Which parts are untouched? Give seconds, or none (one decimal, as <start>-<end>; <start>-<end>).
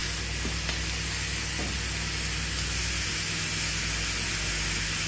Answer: 0.0-5.1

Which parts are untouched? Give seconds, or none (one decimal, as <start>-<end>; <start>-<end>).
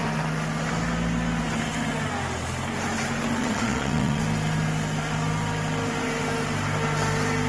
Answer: 0.0-3.4; 4.2-7.5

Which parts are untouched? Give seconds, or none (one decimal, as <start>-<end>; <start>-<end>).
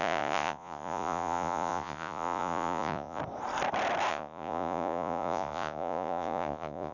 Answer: 3.2-4.1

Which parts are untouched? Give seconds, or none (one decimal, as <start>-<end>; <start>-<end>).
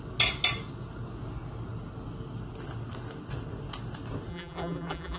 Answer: 0.0-4.3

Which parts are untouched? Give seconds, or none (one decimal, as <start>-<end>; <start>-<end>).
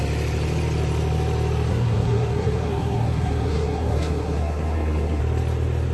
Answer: 0.0-1.7; 5.2-5.9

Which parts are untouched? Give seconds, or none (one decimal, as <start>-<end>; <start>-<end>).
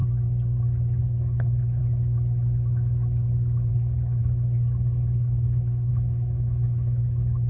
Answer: 0.0-1.0; 1.8-3.7